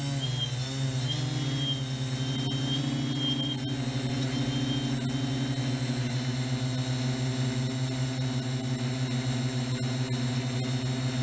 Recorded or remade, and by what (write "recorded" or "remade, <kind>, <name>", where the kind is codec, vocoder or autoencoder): recorded